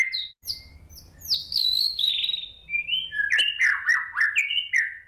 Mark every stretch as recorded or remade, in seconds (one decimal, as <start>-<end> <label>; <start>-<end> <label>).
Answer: 0.0-1.4 recorded; 1.4-2.1 remade; 2.1-5.1 recorded